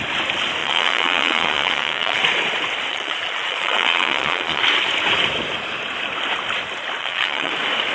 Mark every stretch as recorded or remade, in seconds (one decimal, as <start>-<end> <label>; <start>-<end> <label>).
0.0-0.6 recorded; 0.6-2.2 remade; 2.2-2.9 recorded; 2.9-4.6 remade; 4.6-7.0 recorded; 7.0-7.5 remade; 7.5-7.9 recorded